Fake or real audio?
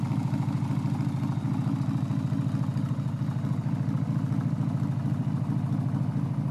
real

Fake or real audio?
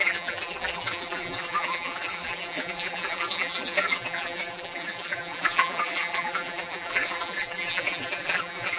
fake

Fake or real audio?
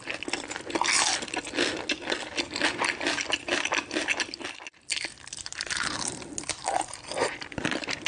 real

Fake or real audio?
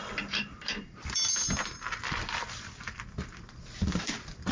fake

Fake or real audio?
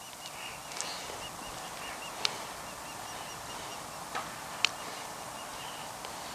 real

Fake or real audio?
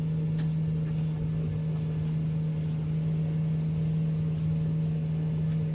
real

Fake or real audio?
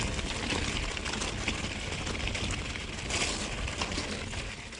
real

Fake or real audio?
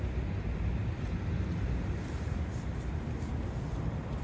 fake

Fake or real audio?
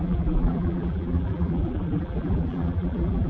fake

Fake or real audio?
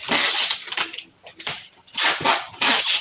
real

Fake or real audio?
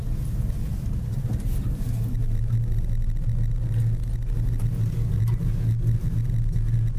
real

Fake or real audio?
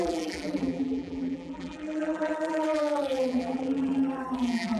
fake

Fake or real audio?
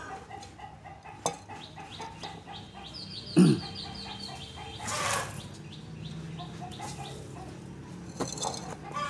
real